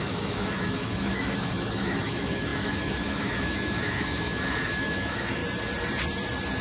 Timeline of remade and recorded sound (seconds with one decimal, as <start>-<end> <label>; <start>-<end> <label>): 0.0-5.4 remade; 5.4-6.6 recorded

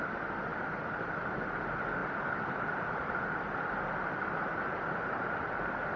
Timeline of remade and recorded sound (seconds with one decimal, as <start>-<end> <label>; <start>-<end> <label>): 0.0-6.0 recorded

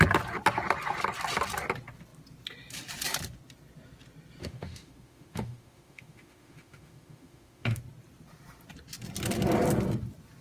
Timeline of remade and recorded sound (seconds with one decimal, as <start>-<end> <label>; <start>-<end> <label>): 0.0-4.4 recorded; 4.4-7.8 remade; 7.8-10.4 recorded

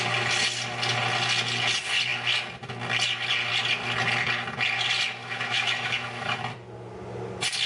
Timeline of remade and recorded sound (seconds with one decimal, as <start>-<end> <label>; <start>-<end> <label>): 0.0-5.2 recorded; 5.2-6.4 remade; 6.4-7.7 recorded

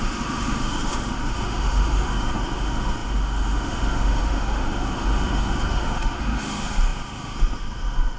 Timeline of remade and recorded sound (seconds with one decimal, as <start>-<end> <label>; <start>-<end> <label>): 0.0-8.2 remade